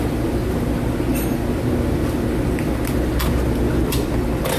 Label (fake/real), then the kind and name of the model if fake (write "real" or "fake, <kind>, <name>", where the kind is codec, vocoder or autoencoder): real